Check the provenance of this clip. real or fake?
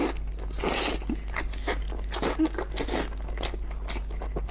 real